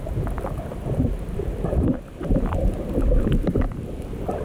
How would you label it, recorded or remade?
remade